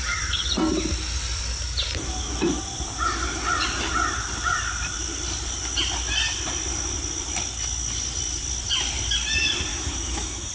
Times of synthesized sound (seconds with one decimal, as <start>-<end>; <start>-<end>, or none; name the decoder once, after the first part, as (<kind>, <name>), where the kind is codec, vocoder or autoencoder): 9.7-10.5 (autoencoder, DAC-VAE)